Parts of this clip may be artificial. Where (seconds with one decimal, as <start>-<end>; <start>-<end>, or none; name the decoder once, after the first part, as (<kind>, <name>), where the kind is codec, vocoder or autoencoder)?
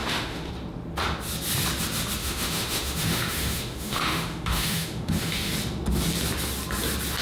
0.0-0.5 (autoencoder, DAC-VAE); 2.2-5.5